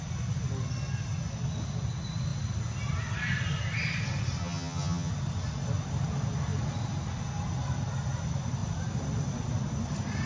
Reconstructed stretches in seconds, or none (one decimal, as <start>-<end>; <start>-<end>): 4.4-5.1